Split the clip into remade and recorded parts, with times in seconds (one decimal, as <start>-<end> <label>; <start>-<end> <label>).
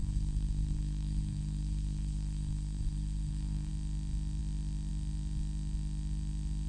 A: 0.0-3.7 remade; 3.7-6.7 recorded